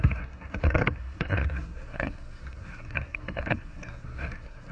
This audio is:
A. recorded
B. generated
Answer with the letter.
B